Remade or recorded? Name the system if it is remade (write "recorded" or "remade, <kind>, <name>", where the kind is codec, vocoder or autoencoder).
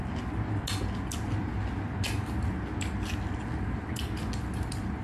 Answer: recorded